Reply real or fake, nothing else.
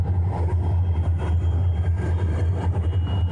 real